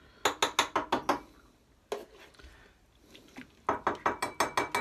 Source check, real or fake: real